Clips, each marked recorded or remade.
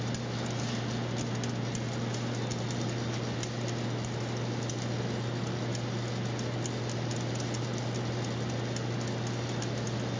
recorded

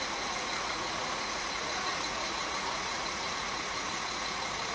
remade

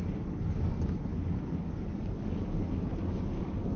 remade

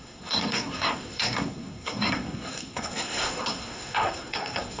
remade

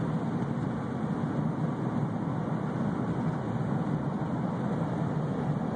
recorded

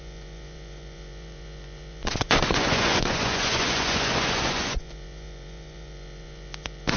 remade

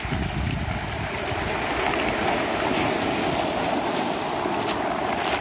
recorded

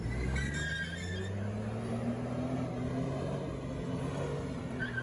recorded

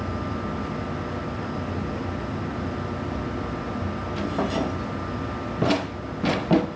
recorded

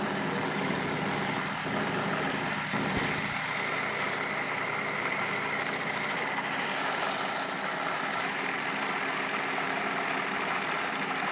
remade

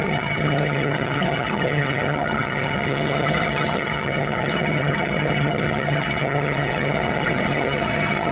remade